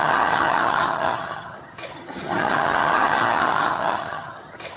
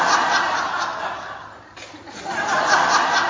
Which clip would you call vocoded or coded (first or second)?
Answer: first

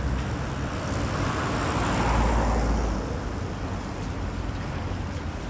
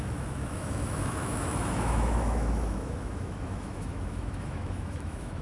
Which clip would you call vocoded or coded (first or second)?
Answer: second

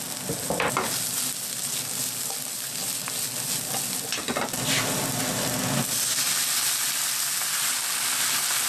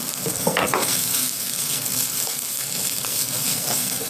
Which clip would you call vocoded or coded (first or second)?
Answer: second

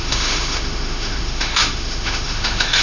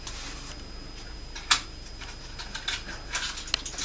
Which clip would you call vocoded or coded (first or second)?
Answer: first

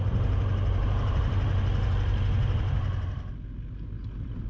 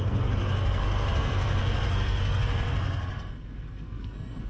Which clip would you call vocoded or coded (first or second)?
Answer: second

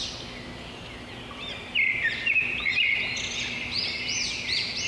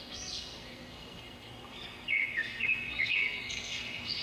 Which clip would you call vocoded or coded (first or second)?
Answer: second